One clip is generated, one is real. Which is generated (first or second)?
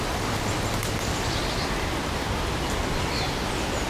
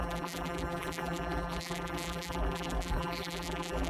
second